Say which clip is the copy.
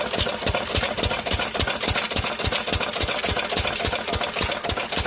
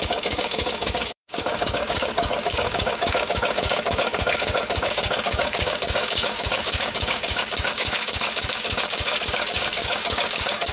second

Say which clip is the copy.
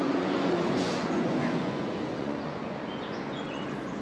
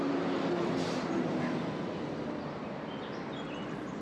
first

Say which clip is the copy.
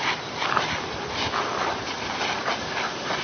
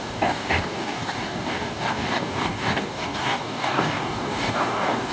second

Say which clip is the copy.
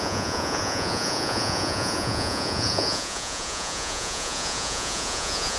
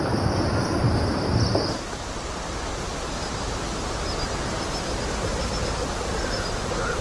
first